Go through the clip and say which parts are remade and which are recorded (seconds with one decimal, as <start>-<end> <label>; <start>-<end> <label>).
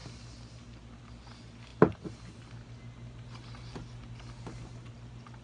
0.0-5.4 recorded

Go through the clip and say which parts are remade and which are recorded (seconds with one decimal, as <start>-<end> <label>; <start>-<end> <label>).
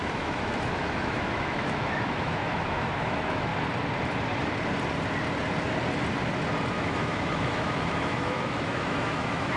0.0-3.5 remade; 3.5-6.7 recorded; 6.7-9.6 remade